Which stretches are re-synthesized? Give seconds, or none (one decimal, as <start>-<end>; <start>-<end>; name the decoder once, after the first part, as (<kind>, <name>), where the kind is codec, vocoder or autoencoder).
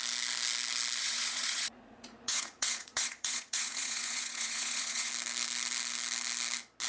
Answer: 1.0-5.1 (vocoder, Vocos)